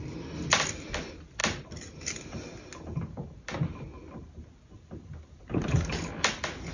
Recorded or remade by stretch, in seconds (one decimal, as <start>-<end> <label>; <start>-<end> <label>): 0.0-6.7 recorded